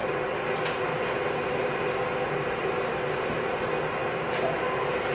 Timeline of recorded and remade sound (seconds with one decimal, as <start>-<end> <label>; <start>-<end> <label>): 0.0-5.1 recorded